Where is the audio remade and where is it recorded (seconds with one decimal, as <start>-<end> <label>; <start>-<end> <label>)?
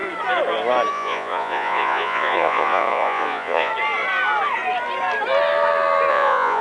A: 0.0-0.9 recorded; 0.9-3.7 remade; 3.7-6.1 recorded; 6.1-6.6 remade